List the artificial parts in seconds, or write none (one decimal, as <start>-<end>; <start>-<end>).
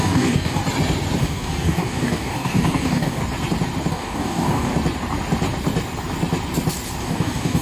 0.0-0.6; 1.2-3.2; 3.9-4.7; 7.0-7.6